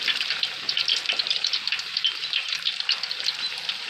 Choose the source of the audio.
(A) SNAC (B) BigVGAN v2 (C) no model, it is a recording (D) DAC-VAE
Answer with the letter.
B